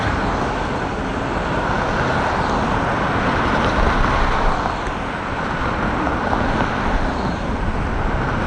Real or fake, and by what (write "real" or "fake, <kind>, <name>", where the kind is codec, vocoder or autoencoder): real